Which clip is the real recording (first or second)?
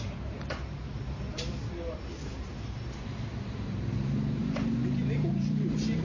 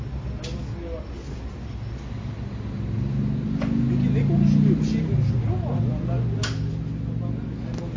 second